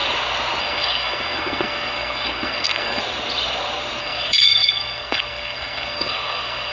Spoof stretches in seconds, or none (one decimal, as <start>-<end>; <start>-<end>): 0.6-3.0; 4.0-6.7